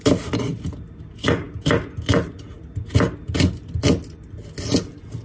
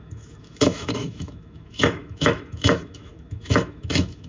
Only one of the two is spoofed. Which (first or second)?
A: second